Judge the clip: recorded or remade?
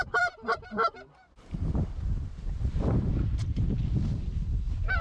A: recorded